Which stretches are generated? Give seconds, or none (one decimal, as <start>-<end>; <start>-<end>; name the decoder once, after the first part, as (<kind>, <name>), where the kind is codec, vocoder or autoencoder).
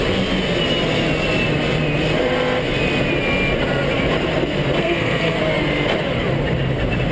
4.8-5.4 (codec, SNAC)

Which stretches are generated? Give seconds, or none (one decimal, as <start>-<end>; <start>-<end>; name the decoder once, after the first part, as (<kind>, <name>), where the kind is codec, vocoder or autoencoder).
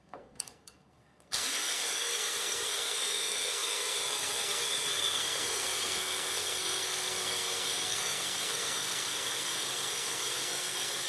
0.0-11.1 (codec, SNAC)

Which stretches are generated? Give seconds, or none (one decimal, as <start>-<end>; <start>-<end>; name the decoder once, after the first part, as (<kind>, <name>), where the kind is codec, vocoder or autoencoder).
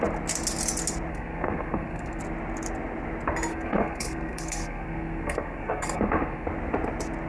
1.1-2.2 (codec, SNAC); 3.5-6.5